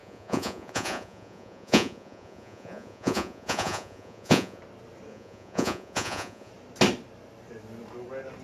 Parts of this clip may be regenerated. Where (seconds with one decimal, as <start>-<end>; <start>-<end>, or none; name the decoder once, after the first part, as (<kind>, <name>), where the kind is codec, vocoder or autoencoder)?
0.0-4.6 (vocoder, Vocos); 5.1-6.5